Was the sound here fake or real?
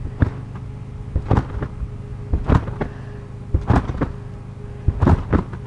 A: real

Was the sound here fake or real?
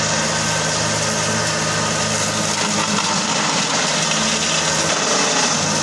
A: real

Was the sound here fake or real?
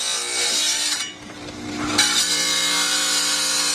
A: real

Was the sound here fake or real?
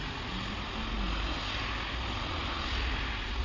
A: real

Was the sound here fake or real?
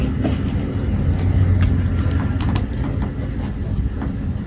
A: real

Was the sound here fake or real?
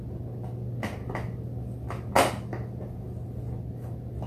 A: real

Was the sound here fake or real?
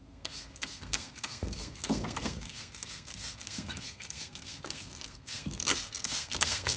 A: fake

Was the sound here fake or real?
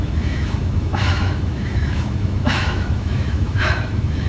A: fake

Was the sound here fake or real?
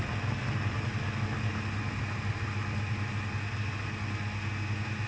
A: real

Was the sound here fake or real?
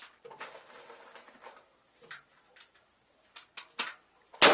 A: real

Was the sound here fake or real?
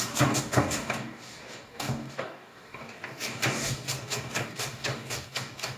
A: fake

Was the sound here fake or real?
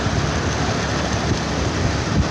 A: real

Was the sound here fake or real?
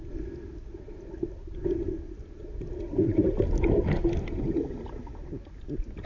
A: real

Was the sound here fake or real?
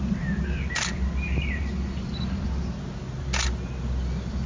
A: real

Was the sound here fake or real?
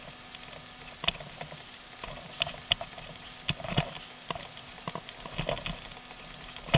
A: real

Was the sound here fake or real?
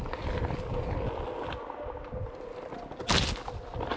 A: real